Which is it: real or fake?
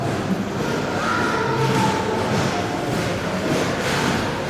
real